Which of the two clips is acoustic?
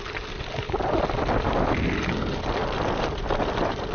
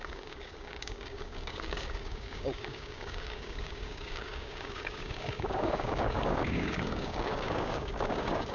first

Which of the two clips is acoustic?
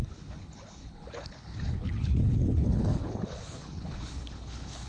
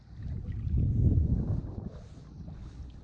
second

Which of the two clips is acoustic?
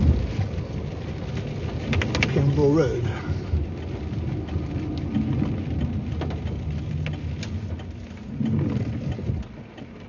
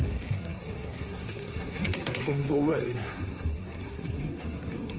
first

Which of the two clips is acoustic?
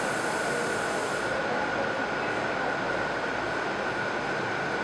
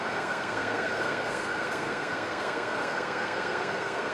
first